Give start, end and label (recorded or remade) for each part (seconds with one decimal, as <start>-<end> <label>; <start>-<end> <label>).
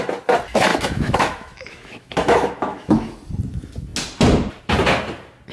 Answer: 0.0-0.7 recorded; 0.7-3.2 remade; 3.2-5.5 recorded